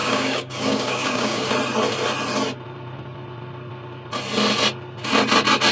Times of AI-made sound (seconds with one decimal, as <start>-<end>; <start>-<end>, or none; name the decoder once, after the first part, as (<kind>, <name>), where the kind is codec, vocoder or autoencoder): 0.0-1.5 (codec, DAC)